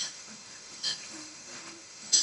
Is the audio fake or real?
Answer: fake